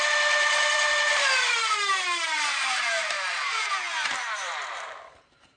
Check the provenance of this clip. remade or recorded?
remade